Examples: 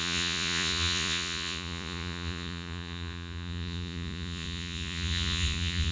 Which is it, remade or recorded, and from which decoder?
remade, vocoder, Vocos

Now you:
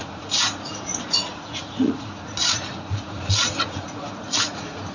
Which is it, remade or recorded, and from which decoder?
remade, vocoder, Vocos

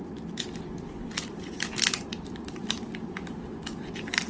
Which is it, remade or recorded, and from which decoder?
recorded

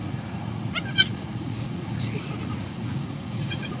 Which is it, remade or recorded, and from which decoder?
remade, vocoder, Vocos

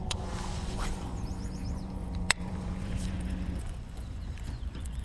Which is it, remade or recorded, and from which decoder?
remade, vocoder, Vocos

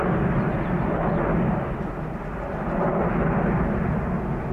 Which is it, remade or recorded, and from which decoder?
recorded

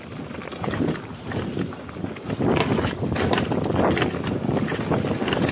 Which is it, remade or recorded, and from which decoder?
recorded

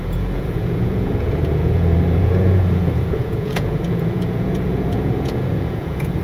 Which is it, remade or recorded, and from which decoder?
remade, vocoder, Vocos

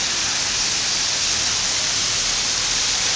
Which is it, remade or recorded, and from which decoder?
recorded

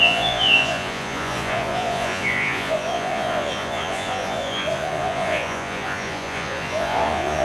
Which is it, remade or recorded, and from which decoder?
remade, vocoder, Vocos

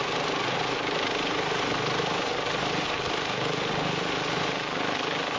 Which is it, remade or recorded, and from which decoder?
recorded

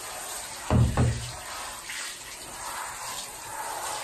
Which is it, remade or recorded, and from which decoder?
recorded